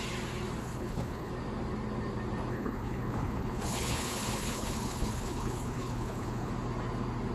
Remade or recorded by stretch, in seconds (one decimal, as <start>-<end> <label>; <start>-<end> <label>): 0.0-0.6 recorded; 0.6-1.3 remade; 1.3-2.5 recorded; 2.5-6.5 remade; 6.5-7.3 recorded